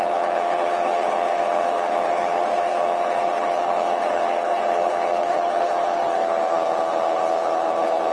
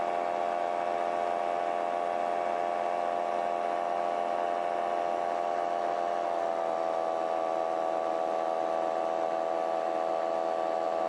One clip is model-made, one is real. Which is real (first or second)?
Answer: second